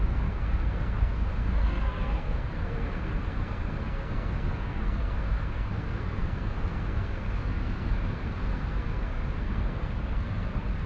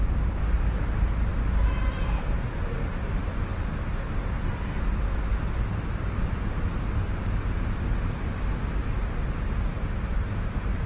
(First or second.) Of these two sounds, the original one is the second